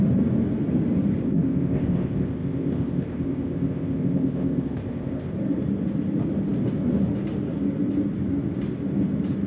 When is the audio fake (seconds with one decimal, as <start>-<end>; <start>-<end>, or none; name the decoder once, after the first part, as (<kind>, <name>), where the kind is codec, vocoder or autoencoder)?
1.2-5.3 (codec, ZipCodec)